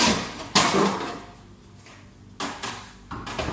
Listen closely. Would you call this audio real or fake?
real